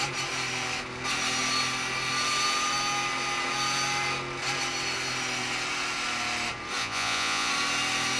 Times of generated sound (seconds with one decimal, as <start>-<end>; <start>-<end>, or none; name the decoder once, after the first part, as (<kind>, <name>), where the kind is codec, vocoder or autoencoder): 6.8-7.5 (vocoder, Vocos)